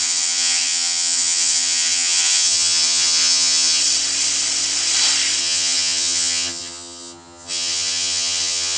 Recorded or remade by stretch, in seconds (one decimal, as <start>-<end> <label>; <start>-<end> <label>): 0.0-3.8 remade; 3.8-5.4 recorded; 5.4-8.8 remade